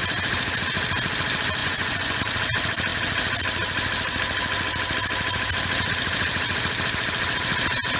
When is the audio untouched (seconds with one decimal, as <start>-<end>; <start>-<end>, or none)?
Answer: 0.0-1.6; 2.2-8.0